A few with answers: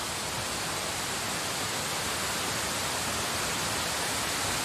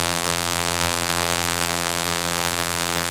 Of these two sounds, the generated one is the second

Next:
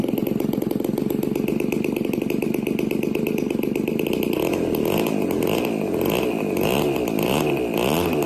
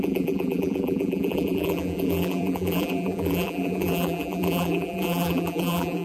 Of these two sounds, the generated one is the second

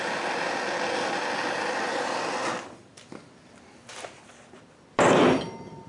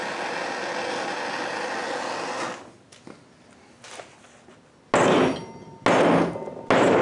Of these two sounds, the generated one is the first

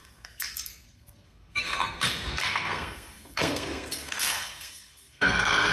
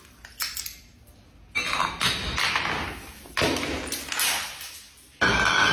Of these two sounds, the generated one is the first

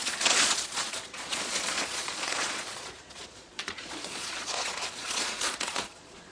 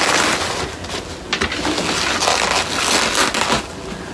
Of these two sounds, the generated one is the first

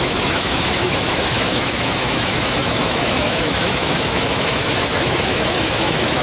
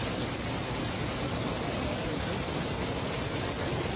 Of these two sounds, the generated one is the first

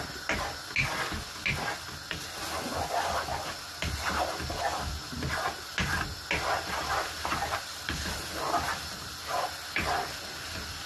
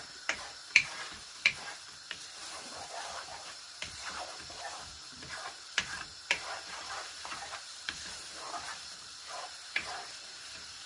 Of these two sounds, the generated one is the second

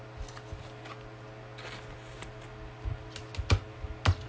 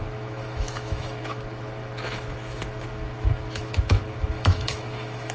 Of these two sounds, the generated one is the second